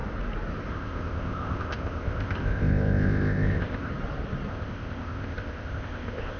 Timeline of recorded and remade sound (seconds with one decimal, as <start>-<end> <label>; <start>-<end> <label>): 0.0-0.7 recorded; 0.7-3.9 remade; 3.9-4.5 recorded; 4.5-6.4 remade